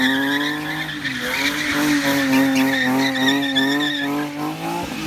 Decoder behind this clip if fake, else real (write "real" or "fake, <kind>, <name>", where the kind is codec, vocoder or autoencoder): real